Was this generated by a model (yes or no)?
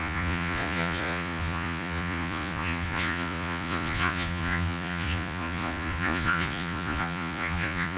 yes